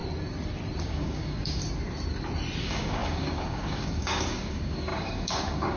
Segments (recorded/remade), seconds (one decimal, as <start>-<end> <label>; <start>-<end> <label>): 0.0-0.8 recorded; 0.8-1.6 remade; 1.6-2.6 recorded; 2.6-5.8 remade